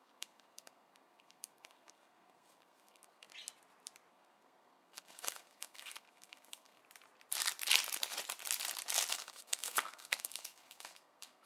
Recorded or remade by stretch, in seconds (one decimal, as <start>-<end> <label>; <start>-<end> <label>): 0.0-3.3 remade; 3.3-4.1 recorded; 4.1-6.8 remade; 6.8-9.1 recorded; 9.1-11.5 remade

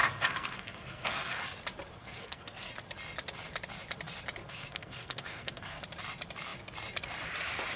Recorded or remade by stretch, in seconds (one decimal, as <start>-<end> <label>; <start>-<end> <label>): 0.0-1.4 remade; 1.4-2.0 recorded; 2.0-2.7 remade; 2.7-4.4 recorded; 4.4-5.8 remade; 5.8-7.8 recorded

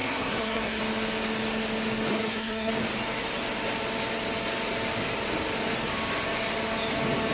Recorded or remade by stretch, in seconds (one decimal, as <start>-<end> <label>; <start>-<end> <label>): 0.0-0.8 remade; 0.8-2.1 recorded; 2.1-2.7 remade; 2.7-7.3 recorded

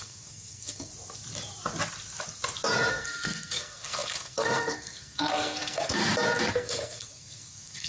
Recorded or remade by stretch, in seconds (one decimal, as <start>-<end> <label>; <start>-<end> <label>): 0.0-0.9 remade; 0.9-2.9 recorded; 2.9-6.0 remade; 6.0-6.5 recorded; 6.5-7.9 remade